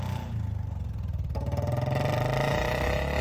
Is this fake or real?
real